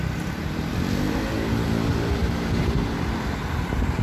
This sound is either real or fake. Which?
real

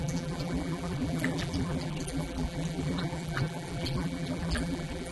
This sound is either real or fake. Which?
fake